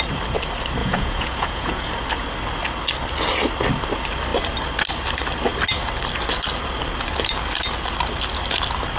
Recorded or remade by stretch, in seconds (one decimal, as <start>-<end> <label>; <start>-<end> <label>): 0.0-0.8 recorded; 0.8-1.9 remade; 1.9-9.0 recorded